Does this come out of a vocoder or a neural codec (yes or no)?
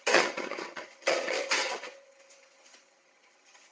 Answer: yes